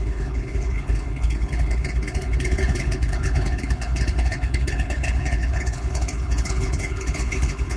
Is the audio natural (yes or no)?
no